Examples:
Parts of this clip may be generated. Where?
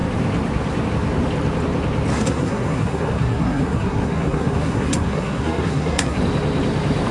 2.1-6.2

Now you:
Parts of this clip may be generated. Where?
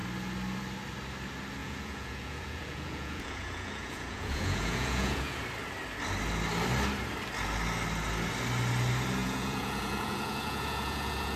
1.6-5.4; 9.2-11.4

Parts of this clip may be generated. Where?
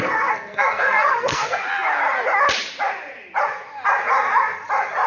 0.0-1.6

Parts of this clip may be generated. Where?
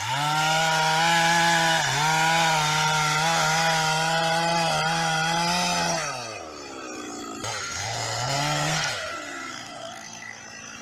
7.6-10.4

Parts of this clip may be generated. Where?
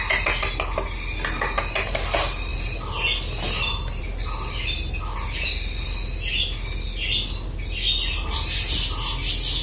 none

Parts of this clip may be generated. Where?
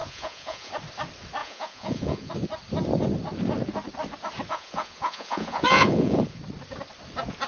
0.0-0.7; 1.4-2.3; 4.5-6.4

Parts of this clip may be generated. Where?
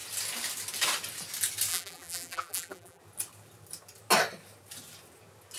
1.7-3.0